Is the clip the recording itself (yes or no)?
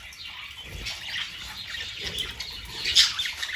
yes